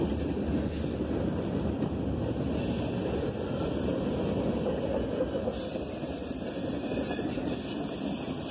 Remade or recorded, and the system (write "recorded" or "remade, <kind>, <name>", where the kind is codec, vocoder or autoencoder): recorded